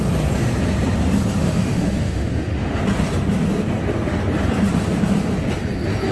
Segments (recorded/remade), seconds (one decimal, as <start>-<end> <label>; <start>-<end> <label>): 0.0-1.4 recorded; 1.4-2.8 remade; 2.8-6.1 recorded